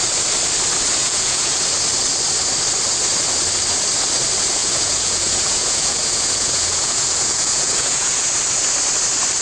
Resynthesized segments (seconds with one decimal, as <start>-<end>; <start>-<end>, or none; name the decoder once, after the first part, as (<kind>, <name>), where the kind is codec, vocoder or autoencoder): 1.0-1.7 (vocoder, Vocos); 4.6-8.3